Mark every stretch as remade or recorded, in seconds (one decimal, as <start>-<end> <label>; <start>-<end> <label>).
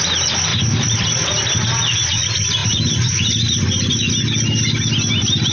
0.0-0.5 recorded; 0.5-1.4 remade; 1.4-2.6 recorded; 2.6-4.1 remade; 4.1-5.5 recorded